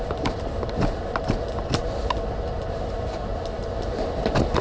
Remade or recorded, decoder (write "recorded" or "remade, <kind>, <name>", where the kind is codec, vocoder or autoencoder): recorded